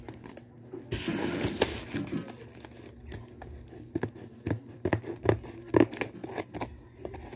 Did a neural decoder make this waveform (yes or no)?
no